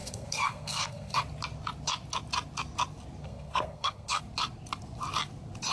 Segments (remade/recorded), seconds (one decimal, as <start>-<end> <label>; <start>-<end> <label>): 0.0-1.2 remade; 1.2-3.2 recorded; 3.2-4.2 remade; 4.2-5.7 recorded